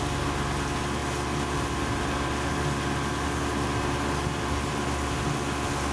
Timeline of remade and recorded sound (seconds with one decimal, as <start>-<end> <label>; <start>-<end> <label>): 0.0-5.9 recorded